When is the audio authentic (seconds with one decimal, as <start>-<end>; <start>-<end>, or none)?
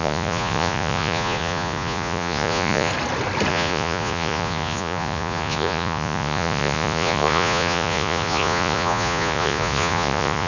2.9-3.5